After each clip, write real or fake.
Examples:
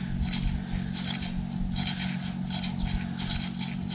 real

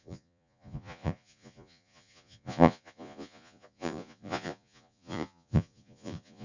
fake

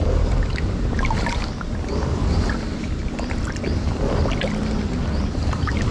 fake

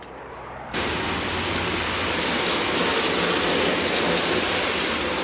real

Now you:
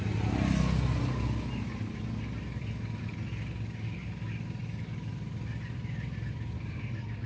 real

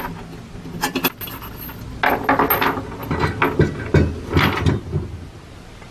real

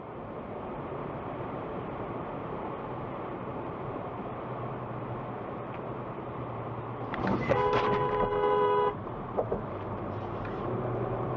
fake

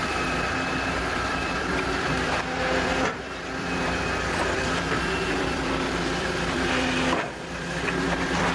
fake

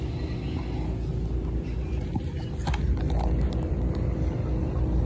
real